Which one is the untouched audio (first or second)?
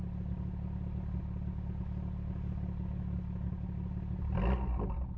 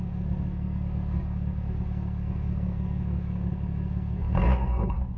first